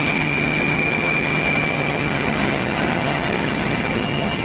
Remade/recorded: remade